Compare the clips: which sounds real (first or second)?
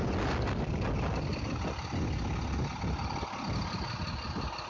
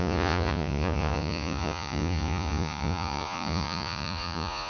first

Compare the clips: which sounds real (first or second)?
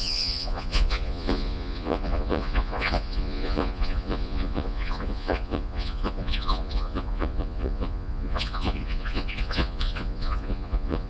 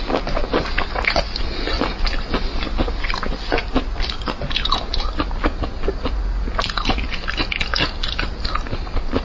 second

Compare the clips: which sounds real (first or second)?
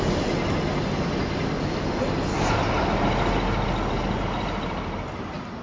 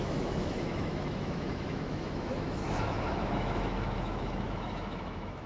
first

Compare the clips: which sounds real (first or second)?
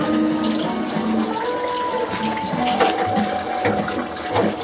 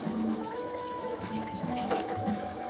first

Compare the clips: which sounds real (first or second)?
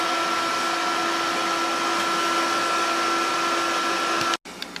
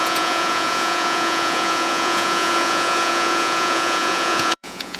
first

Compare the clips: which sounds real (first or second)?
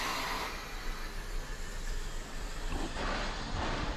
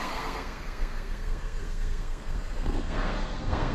first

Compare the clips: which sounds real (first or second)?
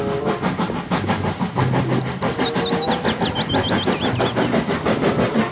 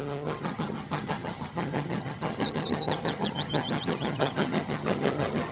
first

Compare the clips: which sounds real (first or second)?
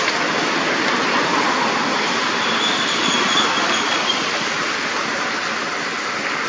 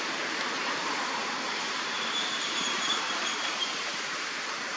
first